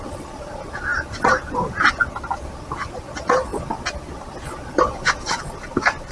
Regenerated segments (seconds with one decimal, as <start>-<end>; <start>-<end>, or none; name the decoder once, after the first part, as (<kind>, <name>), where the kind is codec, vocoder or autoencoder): none